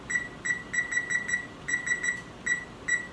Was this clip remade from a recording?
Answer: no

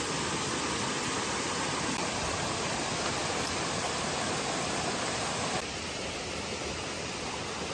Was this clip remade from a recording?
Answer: no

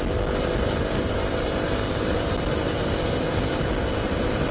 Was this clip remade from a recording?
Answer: no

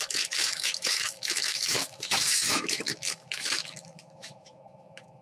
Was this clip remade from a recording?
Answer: yes